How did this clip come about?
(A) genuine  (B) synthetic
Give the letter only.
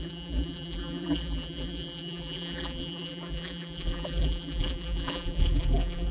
B